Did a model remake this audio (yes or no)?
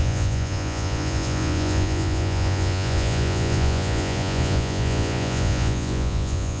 yes